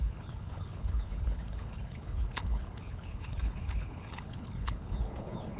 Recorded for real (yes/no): no